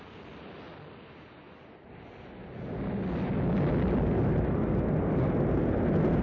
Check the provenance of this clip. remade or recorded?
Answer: recorded